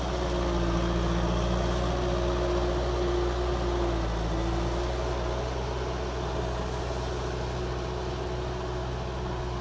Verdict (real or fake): real